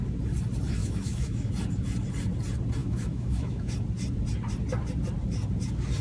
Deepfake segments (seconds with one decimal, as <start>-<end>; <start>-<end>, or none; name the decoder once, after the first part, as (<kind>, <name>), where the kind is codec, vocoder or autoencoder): 0.8-1.5 (autoencoder, DAC-VAE); 2.8-3.7